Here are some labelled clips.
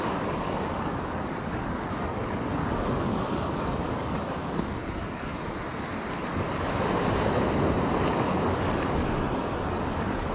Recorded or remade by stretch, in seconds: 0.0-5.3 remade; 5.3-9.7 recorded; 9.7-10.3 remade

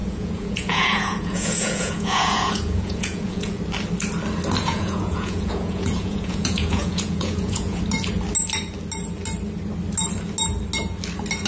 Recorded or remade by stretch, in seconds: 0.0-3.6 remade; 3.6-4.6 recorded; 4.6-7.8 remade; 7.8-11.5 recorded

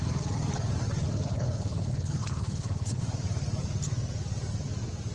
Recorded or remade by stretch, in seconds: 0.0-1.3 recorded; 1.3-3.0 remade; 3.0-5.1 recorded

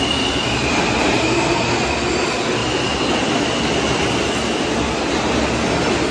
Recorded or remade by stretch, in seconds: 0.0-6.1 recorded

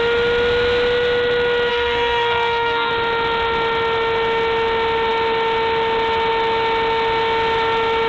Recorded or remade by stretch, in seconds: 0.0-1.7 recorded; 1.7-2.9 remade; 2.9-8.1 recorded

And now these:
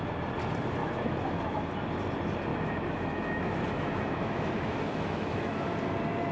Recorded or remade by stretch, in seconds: 0.0-0.8 recorded; 0.8-1.6 remade; 1.6-2.5 recorded; 2.5-5.7 remade; 5.7-6.3 recorded